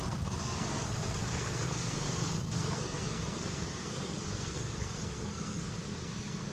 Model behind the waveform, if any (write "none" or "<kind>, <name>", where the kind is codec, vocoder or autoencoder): codec, SNAC